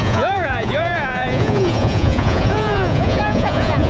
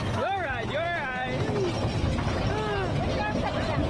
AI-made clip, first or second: first